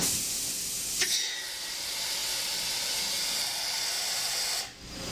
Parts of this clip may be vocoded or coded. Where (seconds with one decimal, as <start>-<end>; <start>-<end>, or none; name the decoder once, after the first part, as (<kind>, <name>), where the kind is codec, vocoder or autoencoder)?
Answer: none